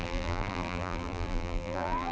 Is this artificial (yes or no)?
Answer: yes